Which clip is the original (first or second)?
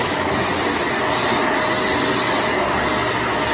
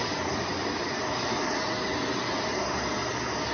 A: first